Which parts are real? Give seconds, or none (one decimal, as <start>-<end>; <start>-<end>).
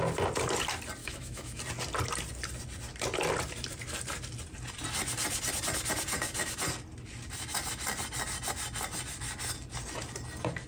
0.0-1.0; 1.6-10.7